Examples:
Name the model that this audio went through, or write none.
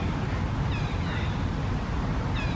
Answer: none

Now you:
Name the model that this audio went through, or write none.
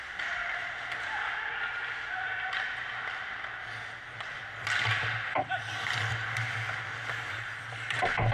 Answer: none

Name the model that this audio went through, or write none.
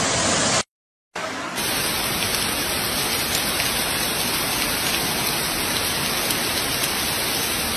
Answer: none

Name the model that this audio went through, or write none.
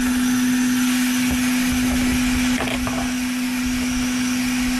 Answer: none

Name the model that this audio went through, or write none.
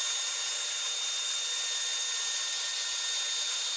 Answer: none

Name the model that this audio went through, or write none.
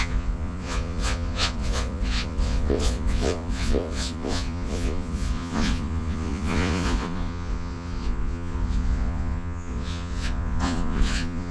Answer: vocoder, Vocos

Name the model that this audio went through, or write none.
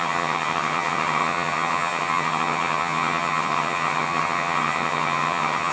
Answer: vocoder, HiFi-GAN